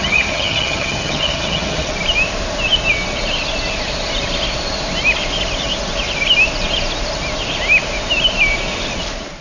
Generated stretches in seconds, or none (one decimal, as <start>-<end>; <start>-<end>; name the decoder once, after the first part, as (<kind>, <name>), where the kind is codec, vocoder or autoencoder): 0.0-1.9 (vocoder, HiFi-GAN)